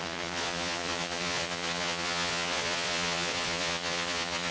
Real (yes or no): no